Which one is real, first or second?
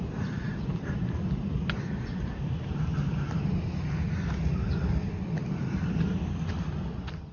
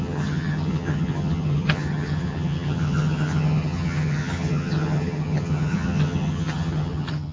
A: first